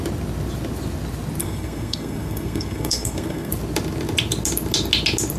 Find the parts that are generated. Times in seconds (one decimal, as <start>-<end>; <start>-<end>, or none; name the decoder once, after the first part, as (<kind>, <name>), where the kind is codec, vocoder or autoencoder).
1.4-3.5 (codec, SNAC)